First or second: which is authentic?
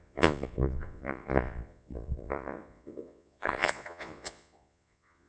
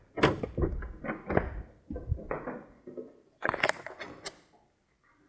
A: second